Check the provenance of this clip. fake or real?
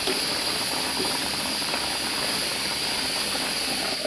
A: real